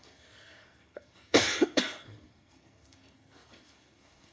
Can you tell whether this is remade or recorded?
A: remade